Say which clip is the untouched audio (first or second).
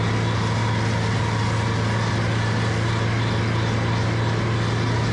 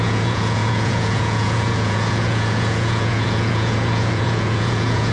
first